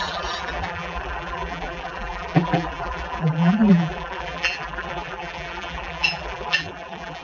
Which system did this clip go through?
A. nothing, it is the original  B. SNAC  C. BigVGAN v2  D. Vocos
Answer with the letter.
C